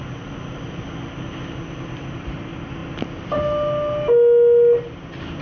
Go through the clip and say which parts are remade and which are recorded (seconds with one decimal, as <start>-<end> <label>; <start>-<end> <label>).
0.0-5.4 recorded